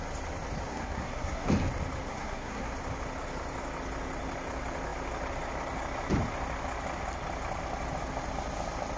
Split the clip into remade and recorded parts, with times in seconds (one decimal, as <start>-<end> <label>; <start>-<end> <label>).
0.0-0.7 recorded; 0.7-1.5 remade; 1.5-2.1 recorded; 2.1-2.7 remade; 2.7-9.0 recorded